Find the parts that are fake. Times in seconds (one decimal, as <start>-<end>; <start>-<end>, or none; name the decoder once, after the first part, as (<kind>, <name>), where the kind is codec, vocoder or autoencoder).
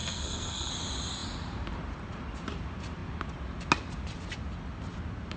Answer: 0.0-0.7 (codec, SNAC)